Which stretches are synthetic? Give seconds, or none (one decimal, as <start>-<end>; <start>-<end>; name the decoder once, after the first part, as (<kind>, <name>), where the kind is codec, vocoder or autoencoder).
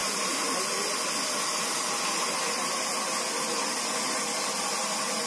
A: none